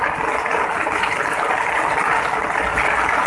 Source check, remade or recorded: recorded